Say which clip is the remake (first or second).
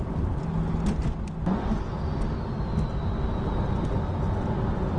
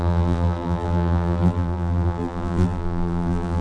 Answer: second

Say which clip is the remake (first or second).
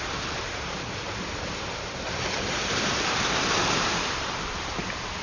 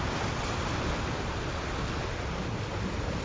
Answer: first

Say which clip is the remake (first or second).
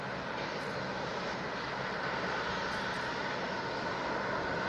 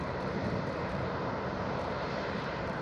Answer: second